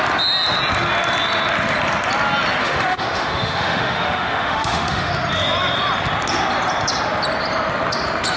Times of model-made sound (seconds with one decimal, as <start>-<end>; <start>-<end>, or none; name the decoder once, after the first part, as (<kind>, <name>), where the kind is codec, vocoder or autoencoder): 2.6-5.1 (autoencoder, DAC-VAE)